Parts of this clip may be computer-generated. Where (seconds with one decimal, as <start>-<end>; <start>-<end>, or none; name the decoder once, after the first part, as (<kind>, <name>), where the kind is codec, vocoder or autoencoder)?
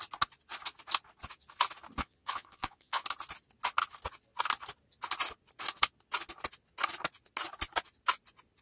2.0-3.0 (vocoder, Vocos)